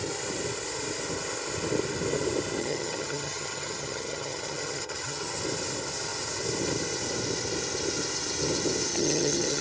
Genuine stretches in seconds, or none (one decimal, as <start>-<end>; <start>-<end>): 0.0-2.6; 5.4-8.9